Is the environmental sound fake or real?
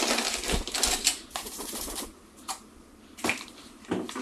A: real